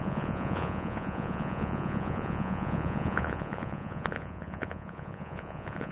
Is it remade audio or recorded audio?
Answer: remade